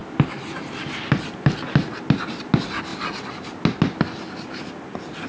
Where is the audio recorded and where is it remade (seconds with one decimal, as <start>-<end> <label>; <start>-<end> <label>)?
0.0-5.3 recorded